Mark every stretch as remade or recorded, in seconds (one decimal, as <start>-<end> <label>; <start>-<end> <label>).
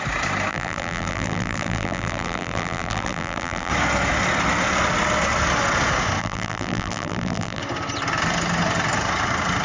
0.0-0.5 recorded; 0.5-3.7 remade; 3.7-6.2 recorded; 6.2-7.6 remade; 7.6-9.6 recorded